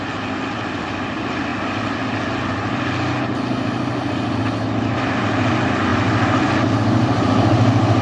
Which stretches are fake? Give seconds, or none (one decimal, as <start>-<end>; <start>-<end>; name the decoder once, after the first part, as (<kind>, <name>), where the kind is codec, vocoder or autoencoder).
none